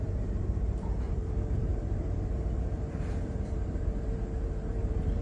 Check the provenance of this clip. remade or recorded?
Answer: remade